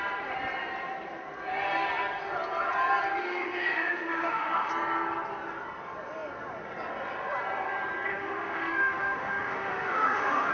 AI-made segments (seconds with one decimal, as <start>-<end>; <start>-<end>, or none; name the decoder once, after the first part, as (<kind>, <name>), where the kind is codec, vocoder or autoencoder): 3.2-4.7 (autoencoder, DAC-VAE); 8.1-10.5